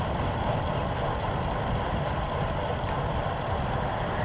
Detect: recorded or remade recorded